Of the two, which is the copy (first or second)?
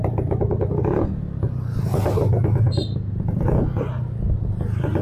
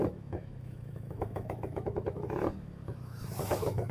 second